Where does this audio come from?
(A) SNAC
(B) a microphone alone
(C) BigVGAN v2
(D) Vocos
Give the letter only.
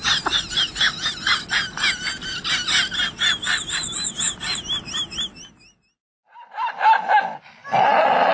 B